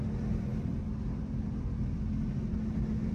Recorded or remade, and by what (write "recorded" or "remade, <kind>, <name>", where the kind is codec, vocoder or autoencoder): recorded